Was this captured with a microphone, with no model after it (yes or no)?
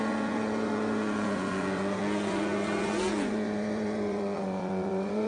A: no